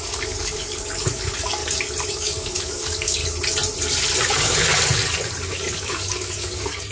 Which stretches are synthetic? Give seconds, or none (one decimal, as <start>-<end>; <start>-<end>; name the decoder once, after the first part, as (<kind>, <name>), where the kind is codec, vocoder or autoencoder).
0.0-1.6 (codec, DAC); 2.1-3.2; 4.3-4.7; 5.5-6.9